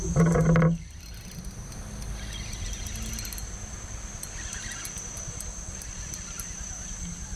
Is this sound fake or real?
real